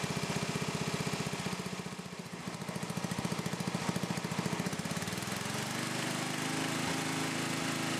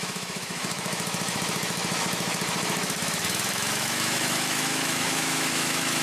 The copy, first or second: second